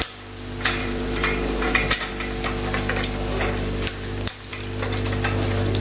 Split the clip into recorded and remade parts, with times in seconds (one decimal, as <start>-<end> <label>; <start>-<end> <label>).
0.0-0.8 recorded; 0.8-2.1 remade; 2.1-5.8 recorded